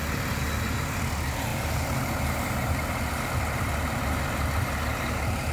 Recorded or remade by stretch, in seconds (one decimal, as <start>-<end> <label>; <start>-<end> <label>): 0.0-5.5 recorded